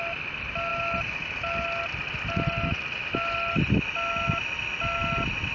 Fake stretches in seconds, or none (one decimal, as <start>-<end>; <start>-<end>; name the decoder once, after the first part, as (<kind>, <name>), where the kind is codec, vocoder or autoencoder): none